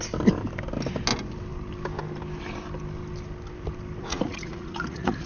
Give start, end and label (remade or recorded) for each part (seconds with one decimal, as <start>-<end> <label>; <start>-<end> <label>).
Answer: 0.0-4.0 recorded; 4.0-5.3 remade